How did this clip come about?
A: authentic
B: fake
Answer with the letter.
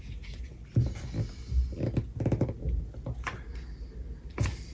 A